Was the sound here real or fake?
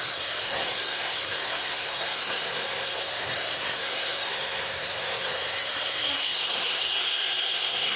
fake